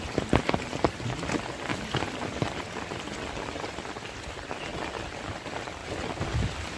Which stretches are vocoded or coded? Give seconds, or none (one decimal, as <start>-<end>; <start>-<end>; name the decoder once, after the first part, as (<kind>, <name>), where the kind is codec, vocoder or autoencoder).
1.7-4.2 (vocoder, BigVGAN v2); 4.7-5.3